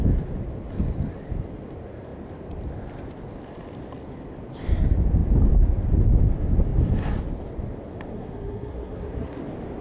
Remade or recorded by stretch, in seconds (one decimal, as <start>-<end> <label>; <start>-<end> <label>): 0.0-8.1 recorded; 8.1-9.4 remade; 9.4-9.8 recorded